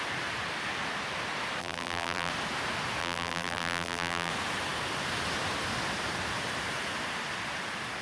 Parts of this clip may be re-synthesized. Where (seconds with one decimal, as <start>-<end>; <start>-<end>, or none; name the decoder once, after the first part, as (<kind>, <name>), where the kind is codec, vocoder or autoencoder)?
1.6-2.3 (vocoder, BigVGAN v2); 3.0-4.3